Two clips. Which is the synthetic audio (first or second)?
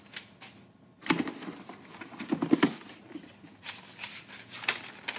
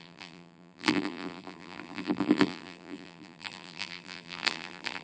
second